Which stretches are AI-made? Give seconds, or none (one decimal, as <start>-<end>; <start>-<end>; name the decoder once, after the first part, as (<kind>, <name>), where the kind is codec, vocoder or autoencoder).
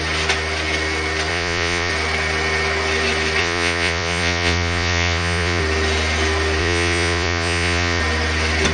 1.3-1.9 (vocoder, Vocos); 3.4-5.6; 6.6-8.0